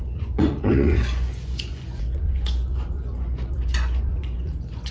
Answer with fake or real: fake